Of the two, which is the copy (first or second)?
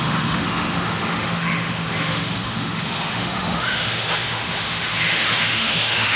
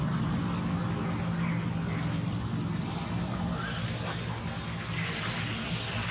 first